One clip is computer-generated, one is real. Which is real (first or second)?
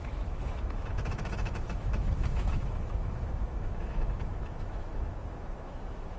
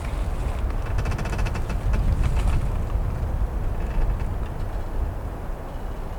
second